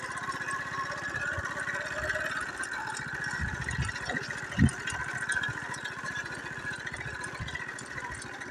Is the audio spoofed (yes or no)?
no